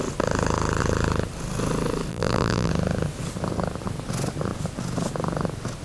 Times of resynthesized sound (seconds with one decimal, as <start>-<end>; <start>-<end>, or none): 2.1-2.7